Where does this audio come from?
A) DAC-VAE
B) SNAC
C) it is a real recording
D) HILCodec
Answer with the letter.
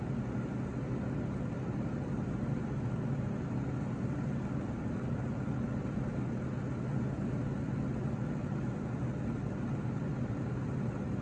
C